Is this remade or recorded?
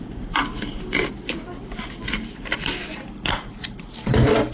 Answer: remade